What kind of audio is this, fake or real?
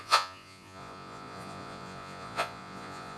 fake